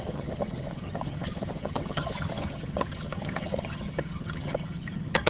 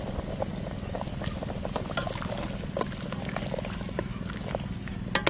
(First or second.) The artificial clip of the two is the first